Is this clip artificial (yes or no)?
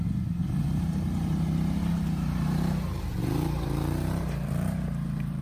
yes